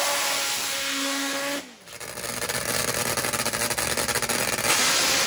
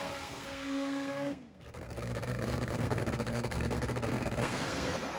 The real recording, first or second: first